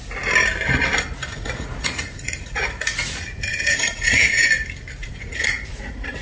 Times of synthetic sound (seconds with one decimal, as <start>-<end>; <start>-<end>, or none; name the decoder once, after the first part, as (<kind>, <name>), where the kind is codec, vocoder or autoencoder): 1.3-4.5 (vocoder, Vocos); 5.0-6.2